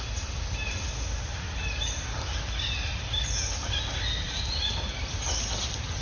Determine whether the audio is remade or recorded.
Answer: recorded